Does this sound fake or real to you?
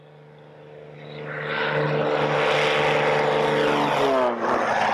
real